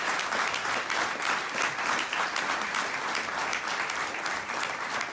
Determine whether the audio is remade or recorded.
recorded